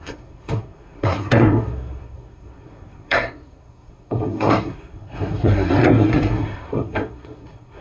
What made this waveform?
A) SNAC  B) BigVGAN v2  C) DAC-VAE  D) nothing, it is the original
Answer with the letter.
A